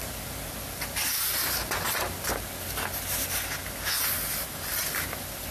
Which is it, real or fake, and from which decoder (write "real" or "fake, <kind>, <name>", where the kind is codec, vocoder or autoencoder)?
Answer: real